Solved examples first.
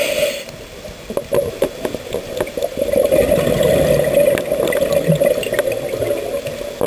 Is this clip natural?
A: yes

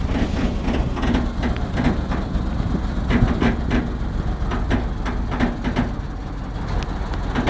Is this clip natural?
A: yes